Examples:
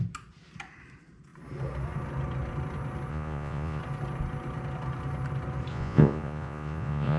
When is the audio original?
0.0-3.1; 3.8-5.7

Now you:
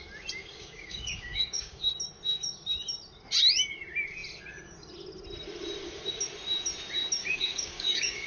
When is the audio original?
0.0-0.4; 1.9-7.2

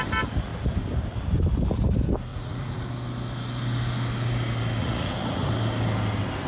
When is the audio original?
0.0-2.3; 2.9-4.8; 5.5-6.5